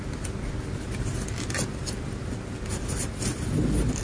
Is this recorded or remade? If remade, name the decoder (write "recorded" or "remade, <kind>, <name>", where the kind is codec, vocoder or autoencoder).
recorded